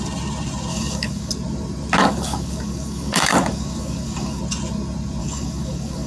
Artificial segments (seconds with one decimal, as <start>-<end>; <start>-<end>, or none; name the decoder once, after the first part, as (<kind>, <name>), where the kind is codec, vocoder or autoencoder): 0.7-1.3 (codec, DAC); 2.0-4.4; 5.2-6.1